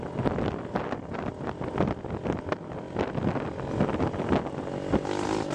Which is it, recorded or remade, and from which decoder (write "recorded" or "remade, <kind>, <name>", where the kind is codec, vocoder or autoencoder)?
recorded